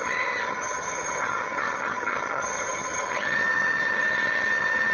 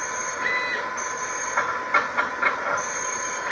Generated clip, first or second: first